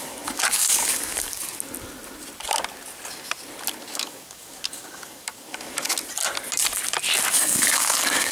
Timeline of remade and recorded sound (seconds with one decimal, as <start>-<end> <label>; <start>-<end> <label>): 0.0-1.4 remade; 1.4-3.8 recorded; 3.8-6.0 remade; 6.0-7.3 recorded; 7.3-8.3 remade